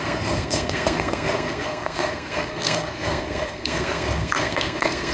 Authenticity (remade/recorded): remade